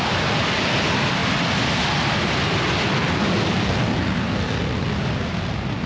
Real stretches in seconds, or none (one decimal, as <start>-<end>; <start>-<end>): 0.0-5.9